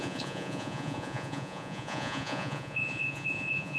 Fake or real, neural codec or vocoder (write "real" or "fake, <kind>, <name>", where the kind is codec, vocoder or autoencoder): fake, vocoder, Vocos